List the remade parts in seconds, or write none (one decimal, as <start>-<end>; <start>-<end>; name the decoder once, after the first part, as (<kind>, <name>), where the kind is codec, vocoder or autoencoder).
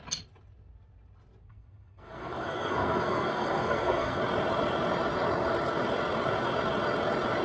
1.5-4.2 (codec, SNAC)